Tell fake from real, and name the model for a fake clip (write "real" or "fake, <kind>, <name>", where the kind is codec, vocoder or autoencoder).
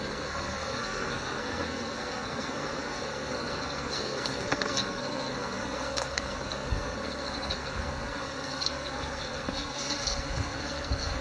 fake, codec, SNAC